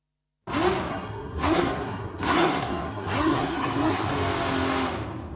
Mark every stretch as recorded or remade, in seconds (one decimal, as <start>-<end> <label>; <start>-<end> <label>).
0.0-0.9 recorded; 0.9-4.1 remade; 4.1-5.4 recorded